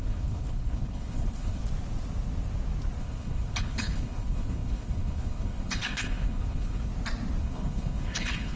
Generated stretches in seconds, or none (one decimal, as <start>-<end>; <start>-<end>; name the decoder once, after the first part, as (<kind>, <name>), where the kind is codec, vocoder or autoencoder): 0.0-1.6 (codec, HILCodec); 3.0-6.9; 7.4-8.6